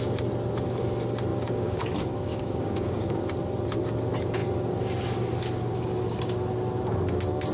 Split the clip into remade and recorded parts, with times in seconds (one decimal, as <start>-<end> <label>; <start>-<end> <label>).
0.0-1.3 recorded; 1.3-1.8 remade; 1.8-2.3 recorded; 2.3-3.2 remade; 3.2-7.5 recorded